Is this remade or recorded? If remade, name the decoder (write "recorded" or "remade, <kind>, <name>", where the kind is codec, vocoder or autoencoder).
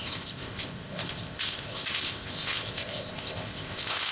remade, codec, ZipCodec